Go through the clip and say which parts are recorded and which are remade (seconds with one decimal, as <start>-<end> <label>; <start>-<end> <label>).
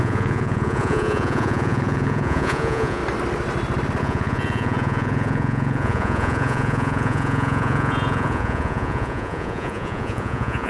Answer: 0.0-3.0 remade; 3.0-4.0 recorded; 4.0-10.7 remade